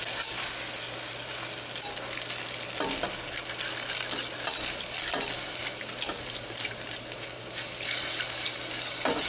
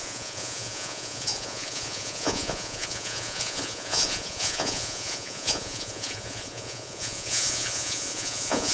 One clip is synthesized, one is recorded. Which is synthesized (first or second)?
second